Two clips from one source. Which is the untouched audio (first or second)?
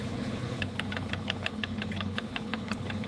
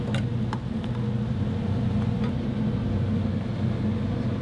second